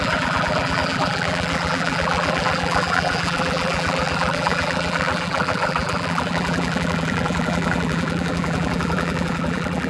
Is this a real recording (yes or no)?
no